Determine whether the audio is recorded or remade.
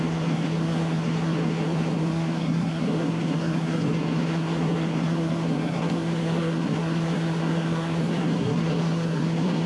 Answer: remade